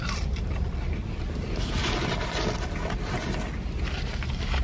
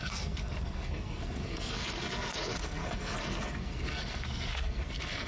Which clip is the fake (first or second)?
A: second